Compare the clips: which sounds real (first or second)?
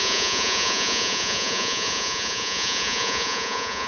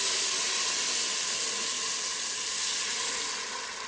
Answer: second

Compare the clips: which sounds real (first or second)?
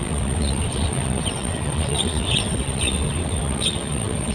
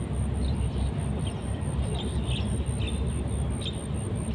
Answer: second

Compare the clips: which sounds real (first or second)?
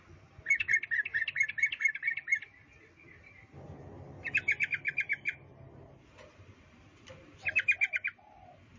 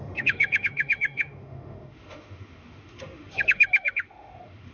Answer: first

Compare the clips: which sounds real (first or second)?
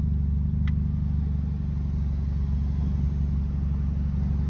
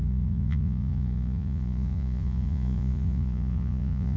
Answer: first